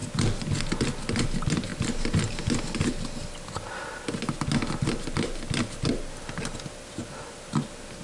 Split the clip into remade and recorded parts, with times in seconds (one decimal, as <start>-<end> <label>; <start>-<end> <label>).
0.0-8.0 recorded

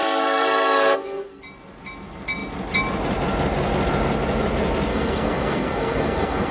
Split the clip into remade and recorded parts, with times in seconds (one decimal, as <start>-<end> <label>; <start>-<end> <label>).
0.0-1.4 remade; 1.4-4.9 recorded; 4.9-6.5 remade

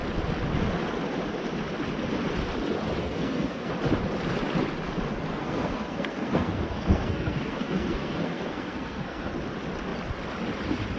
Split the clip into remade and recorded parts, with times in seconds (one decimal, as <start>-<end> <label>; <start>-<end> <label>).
0.0-3.0 recorded; 3.0-3.7 remade; 3.7-5.3 recorded; 5.3-9.3 remade; 9.3-11.0 recorded